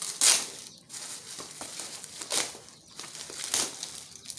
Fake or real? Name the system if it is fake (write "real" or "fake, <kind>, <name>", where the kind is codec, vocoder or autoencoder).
real